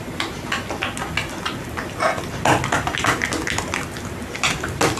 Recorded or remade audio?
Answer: recorded